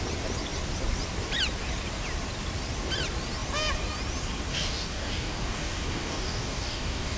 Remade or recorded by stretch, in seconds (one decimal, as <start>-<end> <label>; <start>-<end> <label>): 0.0-4.5 recorded; 4.5-7.2 remade